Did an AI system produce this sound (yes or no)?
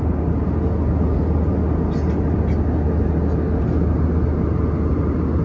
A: no